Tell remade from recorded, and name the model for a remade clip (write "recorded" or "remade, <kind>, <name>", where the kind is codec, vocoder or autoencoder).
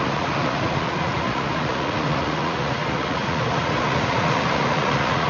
remade, vocoder, Vocos